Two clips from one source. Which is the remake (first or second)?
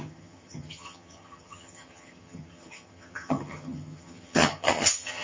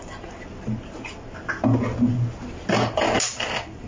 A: first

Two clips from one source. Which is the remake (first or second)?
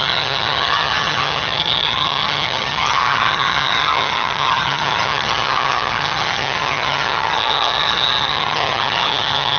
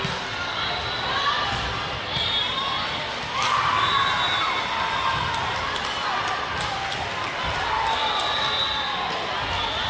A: first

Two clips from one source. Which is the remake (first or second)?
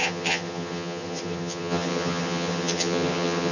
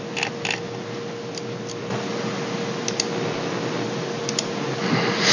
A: first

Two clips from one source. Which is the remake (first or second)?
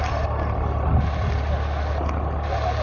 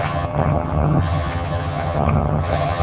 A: second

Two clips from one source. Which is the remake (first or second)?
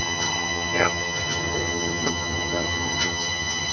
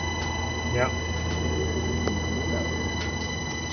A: first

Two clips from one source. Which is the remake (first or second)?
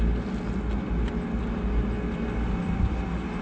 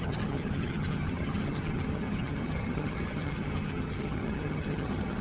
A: second